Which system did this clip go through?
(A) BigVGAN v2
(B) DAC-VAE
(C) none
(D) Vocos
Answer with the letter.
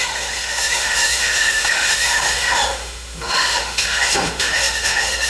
B